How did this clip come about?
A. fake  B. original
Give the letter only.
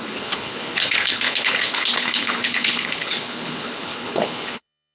A